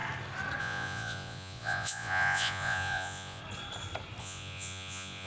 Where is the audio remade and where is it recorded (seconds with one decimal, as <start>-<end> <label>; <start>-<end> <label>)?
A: 0.0-0.6 recorded; 0.6-3.4 remade; 3.4-4.2 recorded; 4.2-5.3 remade

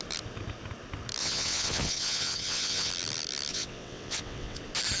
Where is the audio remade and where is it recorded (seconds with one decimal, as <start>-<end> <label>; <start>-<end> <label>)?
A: 0.0-1.2 recorded; 1.2-2.9 remade; 2.9-3.5 recorded; 3.5-4.6 remade; 4.6-5.0 recorded

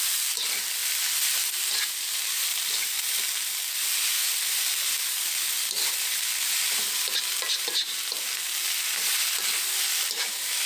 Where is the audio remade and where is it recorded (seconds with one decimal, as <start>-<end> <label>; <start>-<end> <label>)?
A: 0.0-0.8 recorded; 0.8-3.2 remade; 3.2-10.7 recorded

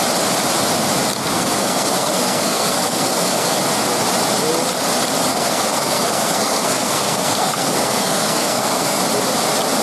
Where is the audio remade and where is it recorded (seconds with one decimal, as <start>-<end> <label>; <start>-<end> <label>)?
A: 0.0-1.2 recorded; 1.2-3.6 remade; 3.6-5.3 recorded; 5.3-9.0 remade; 9.0-9.8 recorded

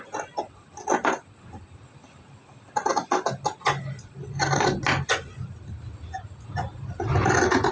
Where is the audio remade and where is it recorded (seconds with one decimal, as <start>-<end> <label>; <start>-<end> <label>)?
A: 0.0-7.7 recorded